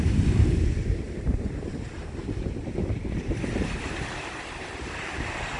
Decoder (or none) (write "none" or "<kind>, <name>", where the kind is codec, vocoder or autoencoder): vocoder, BigVGAN v2